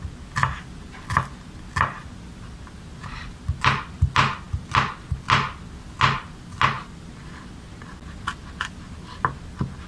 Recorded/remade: recorded